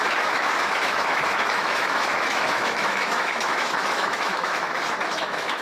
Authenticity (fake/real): fake